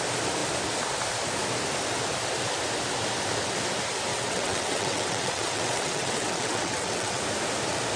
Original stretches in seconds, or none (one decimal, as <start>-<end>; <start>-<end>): 0.0-4.1; 7.2-8.0